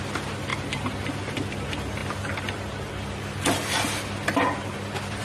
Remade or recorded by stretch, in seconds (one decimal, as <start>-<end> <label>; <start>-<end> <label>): 0.0-5.2 recorded